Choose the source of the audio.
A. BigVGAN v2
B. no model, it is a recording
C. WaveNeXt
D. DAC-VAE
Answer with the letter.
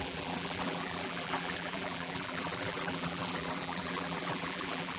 A